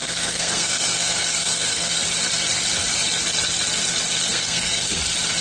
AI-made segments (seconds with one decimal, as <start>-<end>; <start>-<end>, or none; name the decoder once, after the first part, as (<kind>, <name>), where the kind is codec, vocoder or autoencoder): 0.0-2.0 (codec, SNAC); 4.3-5.0